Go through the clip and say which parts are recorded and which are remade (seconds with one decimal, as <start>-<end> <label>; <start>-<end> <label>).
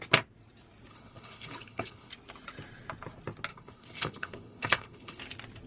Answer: 0.0-0.9 recorded; 0.9-2.1 remade; 2.1-3.5 recorded; 3.5-5.2 remade; 5.2-5.7 recorded